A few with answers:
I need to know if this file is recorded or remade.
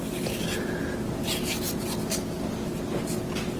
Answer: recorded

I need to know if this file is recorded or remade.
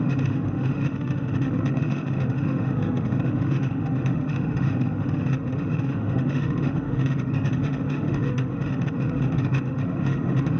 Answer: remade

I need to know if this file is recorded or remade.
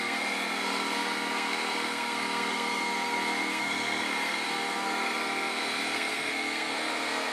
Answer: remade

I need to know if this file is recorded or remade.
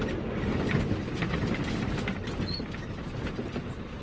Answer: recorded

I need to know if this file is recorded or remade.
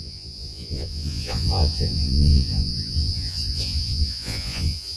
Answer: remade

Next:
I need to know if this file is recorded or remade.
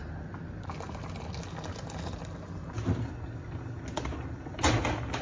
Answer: recorded